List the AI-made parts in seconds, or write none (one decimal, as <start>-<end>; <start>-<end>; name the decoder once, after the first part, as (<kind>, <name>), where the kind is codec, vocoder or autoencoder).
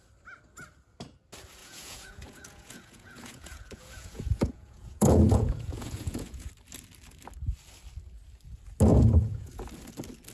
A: 1.6-6.5 (vocoder, Vocos); 8.9-9.6